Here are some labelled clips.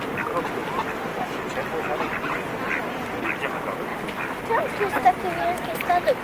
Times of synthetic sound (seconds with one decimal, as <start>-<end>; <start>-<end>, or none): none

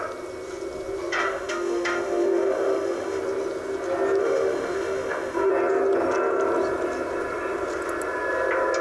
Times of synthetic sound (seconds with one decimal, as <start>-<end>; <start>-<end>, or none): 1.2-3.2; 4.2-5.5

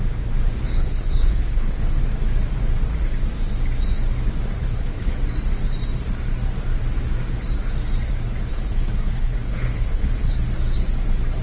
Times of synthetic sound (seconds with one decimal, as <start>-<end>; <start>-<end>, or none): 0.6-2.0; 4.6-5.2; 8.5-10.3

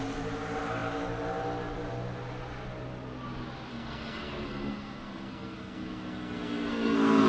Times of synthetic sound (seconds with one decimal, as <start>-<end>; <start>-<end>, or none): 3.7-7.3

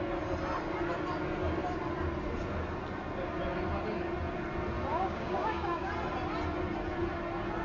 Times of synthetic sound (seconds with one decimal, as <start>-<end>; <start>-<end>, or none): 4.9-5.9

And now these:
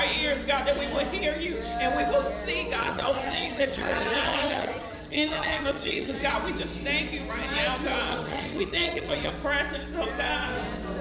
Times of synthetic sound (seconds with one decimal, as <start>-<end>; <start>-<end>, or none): 2.8-6.2; 8.1-9.3

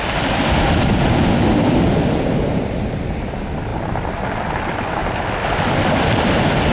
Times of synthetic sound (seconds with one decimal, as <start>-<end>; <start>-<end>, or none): none

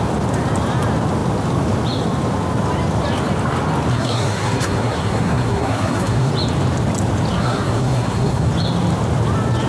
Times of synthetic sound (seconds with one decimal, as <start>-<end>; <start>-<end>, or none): 3.9-6.3; 7.4-8.5